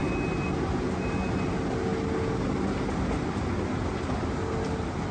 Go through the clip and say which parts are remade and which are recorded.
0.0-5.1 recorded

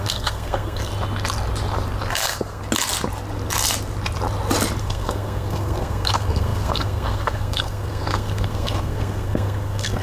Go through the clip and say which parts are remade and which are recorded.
0.0-0.9 remade; 0.9-2.1 recorded; 2.1-2.6 remade; 2.6-4.8 recorded; 4.8-10.0 remade

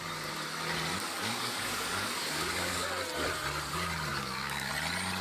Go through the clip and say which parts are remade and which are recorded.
0.0-0.9 recorded; 0.9-2.9 remade; 2.9-4.1 recorded; 4.1-4.7 remade; 4.7-5.2 recorded

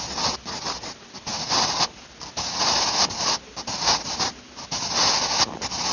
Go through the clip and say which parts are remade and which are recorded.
0.0-5.9 recorded

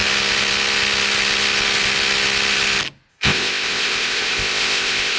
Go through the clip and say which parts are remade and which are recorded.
0.0-3.1 recorded; 3.1-5.2 remade

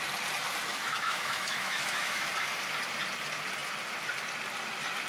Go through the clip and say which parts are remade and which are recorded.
0.0-0.7 recorded; 0.7-2.3 remade; 2.3-5.1 recorded

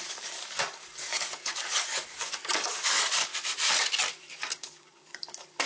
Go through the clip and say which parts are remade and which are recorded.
0.0-3.3 remade; 3.3-4.1 recorded; 4.1-5.7 remade